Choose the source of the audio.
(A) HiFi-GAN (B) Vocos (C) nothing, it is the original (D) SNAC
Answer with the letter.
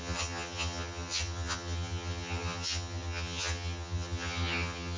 A